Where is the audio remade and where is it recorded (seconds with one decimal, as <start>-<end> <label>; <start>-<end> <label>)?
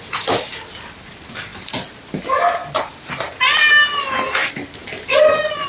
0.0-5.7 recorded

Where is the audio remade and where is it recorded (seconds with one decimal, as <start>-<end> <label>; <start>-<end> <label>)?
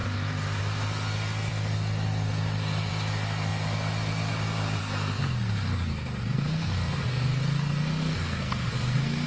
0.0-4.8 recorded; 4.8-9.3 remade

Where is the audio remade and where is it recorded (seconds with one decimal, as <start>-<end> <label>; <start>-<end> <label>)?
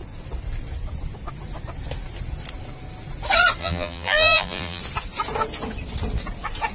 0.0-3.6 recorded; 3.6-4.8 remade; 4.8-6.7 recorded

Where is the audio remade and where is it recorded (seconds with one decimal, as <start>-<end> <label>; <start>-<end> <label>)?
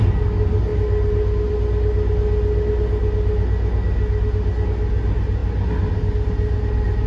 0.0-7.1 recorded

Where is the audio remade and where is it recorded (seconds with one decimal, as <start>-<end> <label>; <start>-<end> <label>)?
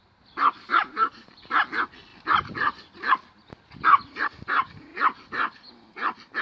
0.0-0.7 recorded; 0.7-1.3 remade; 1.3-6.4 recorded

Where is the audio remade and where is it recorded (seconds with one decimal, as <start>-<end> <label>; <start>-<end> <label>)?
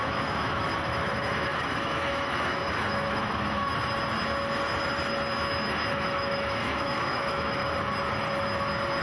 0.0-3.7 remade; 3.7-5.9 recorded; 5.9-7.6 remade; 7.6-9.0 recorded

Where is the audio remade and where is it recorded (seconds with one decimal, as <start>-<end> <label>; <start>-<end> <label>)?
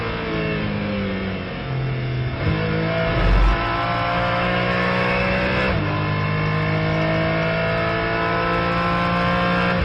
0.0-4.1 recorded; 4.1-5.2 remade; 5.2-9.8 recorded